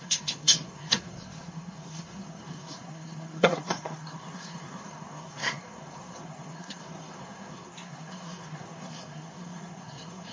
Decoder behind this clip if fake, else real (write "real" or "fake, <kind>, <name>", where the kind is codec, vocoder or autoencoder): fake, codec, SNAC